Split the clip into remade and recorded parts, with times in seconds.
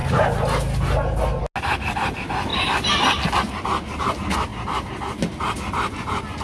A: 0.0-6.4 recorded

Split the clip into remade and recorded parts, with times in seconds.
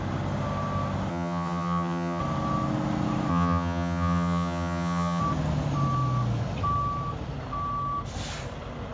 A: 0.0-1.1 recorded; 1.1-2.2 remade; 2.2-3.3 recorded; 3.3-5.2 remade; 5.2-8.9 recorded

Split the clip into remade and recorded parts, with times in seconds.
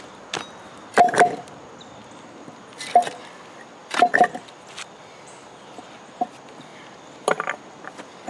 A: 0.0-6.7 recorded; 6.7-7.9 remade; 7.9-8.3 recorded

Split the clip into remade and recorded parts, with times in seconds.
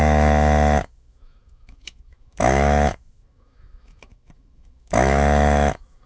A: 0.0-6.1 remade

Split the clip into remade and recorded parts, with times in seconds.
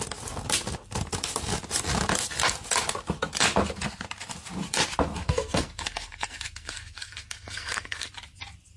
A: 0.0-5.2 recorded; 5.2-8.1 remade; 8.1-8.8 recorded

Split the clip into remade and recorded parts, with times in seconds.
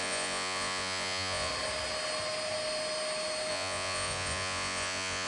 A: 0.0-1.5 remade; 1.5-3.5 recorded; 3.5-5.3 remade